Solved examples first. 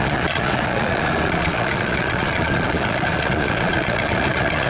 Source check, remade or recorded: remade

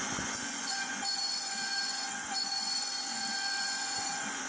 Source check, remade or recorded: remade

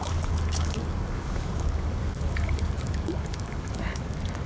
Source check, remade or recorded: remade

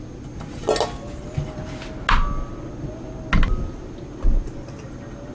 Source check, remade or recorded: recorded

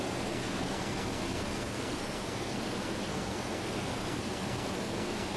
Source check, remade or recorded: remade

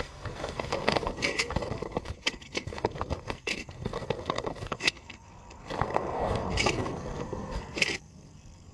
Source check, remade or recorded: remade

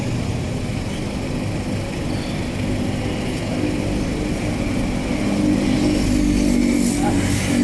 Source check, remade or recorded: recorded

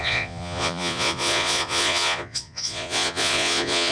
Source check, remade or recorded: remade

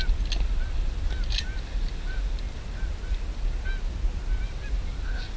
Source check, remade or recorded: recorded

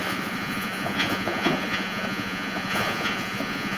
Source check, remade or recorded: remade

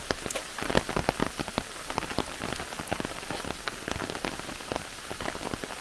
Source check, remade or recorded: recorded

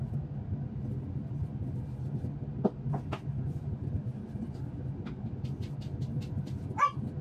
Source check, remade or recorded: recorded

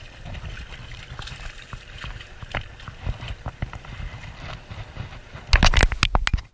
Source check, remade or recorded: recorded